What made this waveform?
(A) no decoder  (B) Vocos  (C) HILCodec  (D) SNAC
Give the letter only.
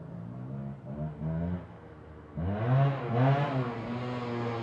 A